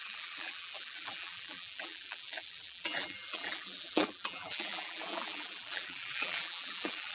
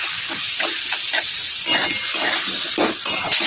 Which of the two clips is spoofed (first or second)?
first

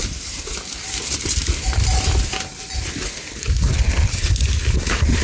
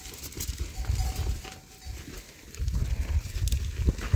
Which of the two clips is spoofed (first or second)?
first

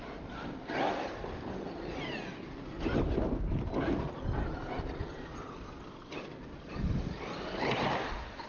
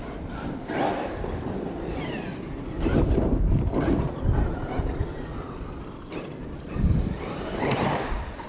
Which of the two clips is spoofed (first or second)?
second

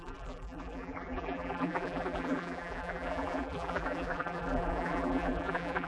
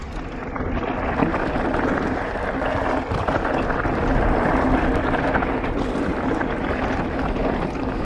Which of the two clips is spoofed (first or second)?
first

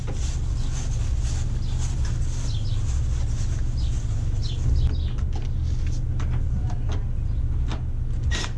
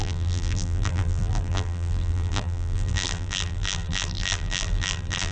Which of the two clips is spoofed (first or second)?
second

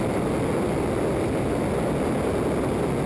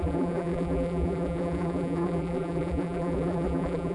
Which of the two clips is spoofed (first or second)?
second